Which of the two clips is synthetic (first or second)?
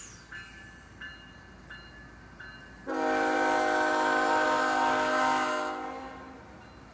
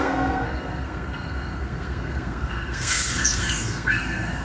second